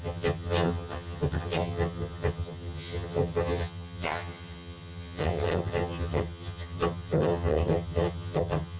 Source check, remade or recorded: remade